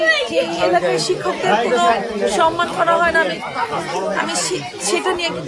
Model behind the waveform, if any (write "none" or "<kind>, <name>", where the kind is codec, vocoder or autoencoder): none